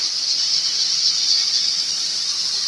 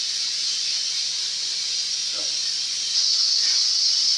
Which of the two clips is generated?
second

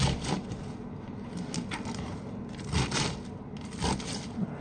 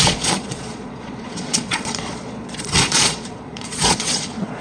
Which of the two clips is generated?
second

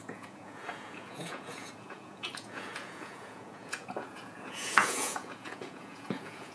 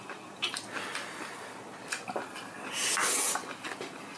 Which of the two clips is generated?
first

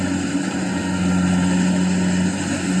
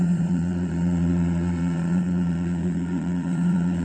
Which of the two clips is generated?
second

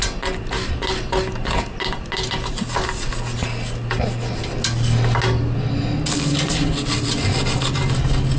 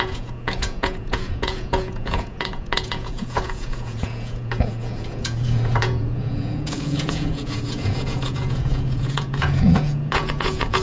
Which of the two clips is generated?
second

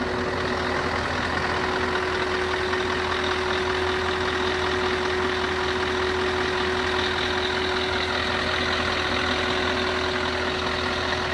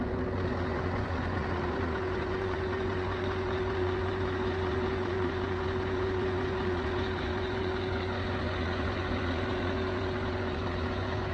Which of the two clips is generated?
second